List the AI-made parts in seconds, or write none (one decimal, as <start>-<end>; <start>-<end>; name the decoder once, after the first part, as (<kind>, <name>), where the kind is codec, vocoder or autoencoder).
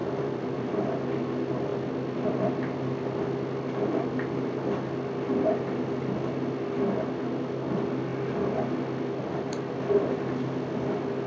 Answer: 0.0-0.8 (vocoder, BigVGAN v2)